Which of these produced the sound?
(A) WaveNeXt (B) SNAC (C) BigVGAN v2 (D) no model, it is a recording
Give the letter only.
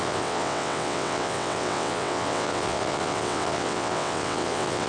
A